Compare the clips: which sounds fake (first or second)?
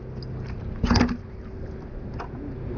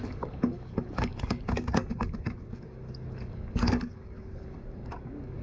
second